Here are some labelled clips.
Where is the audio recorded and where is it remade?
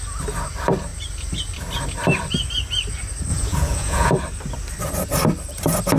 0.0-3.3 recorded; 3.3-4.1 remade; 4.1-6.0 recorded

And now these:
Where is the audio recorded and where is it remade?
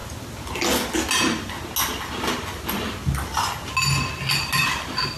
0.0-5.2 recorded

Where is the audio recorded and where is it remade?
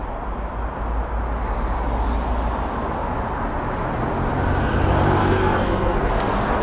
0.0-5.2 recorded; 5.2-6.1 remade; 6.1-6.6 recorded